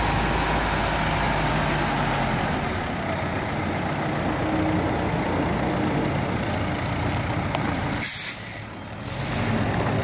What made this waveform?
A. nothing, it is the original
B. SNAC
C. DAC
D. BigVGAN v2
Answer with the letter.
A